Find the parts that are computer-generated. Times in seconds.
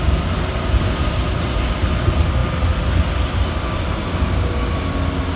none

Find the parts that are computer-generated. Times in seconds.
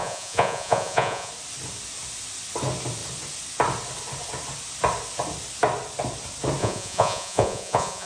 0.0-1.3 (vocoder, Vocos); 6.6-8.1